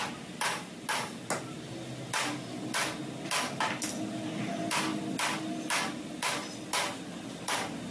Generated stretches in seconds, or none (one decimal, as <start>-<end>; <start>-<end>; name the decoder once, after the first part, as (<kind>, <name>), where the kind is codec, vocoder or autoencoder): none